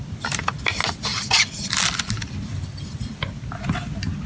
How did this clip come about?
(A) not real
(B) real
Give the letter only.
B